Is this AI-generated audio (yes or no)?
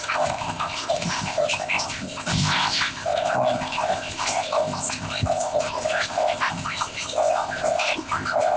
yes